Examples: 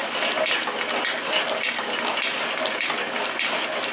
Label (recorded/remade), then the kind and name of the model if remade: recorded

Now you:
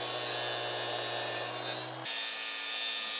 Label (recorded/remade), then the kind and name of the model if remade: recorded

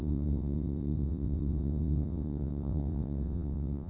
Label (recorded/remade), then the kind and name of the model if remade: remade, vocoder, WaveNeXt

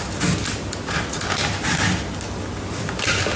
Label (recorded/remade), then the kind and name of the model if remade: recorded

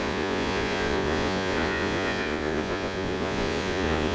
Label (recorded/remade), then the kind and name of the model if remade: remade, vocoder, Vocos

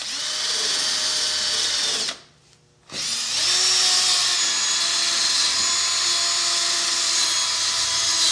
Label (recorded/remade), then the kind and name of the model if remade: recorded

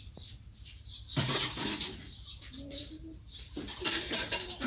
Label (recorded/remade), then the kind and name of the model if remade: remade, vocoder, BigVGAN v2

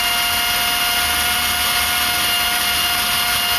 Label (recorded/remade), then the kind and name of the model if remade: recorded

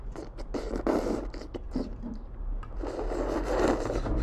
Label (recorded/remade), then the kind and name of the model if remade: recorded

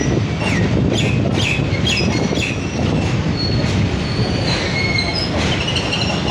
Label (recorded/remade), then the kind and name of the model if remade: recorded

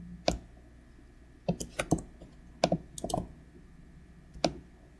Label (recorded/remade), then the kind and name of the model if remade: recorded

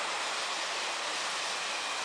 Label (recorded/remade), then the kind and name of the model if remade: recorded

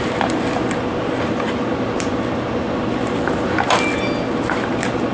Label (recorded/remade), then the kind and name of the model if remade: recorded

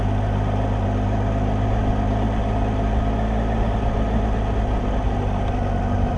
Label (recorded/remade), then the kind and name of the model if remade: recorded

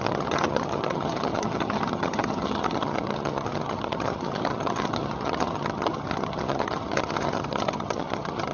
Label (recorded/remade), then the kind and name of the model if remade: remade, vocoder, HiFi-GAN